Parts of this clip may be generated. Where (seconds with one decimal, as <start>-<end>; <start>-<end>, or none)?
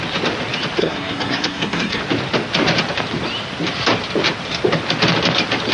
0.8-2.0